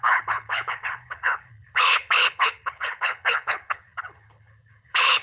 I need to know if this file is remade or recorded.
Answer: remade